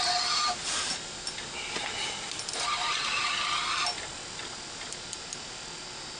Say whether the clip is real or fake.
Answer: real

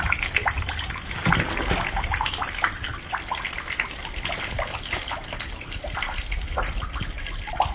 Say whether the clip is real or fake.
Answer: real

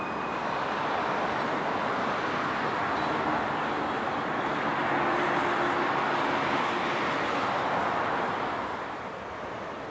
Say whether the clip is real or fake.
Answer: real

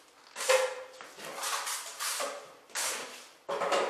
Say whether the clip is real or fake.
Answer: real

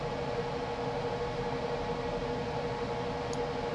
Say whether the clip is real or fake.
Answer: real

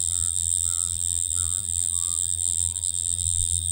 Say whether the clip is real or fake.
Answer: fake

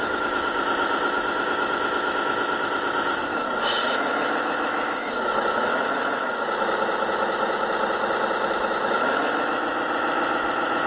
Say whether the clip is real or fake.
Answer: fake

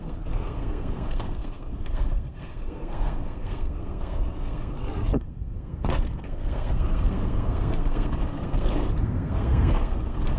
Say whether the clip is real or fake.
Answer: fake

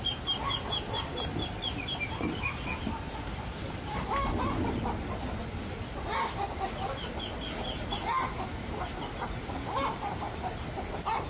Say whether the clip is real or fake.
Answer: fake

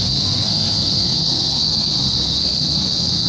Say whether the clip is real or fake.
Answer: fake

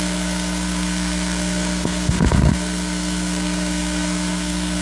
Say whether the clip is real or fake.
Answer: fake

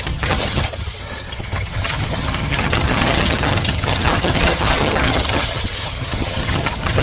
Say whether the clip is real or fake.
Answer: fake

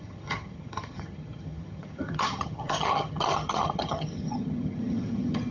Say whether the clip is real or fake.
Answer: fake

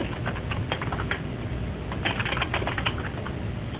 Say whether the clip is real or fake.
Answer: real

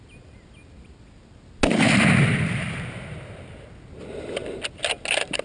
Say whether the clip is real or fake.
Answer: real